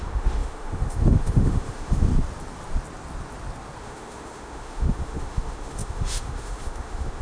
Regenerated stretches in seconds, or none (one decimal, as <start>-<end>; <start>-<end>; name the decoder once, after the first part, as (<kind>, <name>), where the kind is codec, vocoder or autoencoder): 0.0-2.1 (autoencoder, DAC-VAE); 3.8-7.2